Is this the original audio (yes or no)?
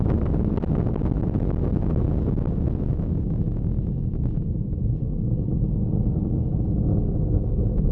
yes